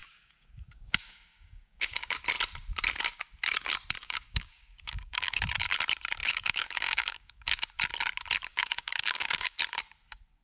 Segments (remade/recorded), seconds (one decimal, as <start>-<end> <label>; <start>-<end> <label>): 0.0-2.2 remade; 2.2-4.0 recorded; 4.0-5.4 remade; 5.4-6.2 recorded; 6.2-7.7 remade; 7.7-8.5 recorded; 8.5-9.6 remade; 9.6-10.4 recorded